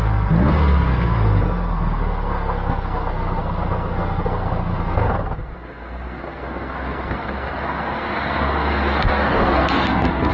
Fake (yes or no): yes